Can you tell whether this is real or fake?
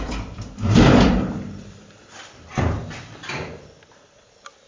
fake